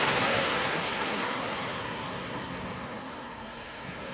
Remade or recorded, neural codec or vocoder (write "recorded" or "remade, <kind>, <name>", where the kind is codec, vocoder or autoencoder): remade, codec, SNAC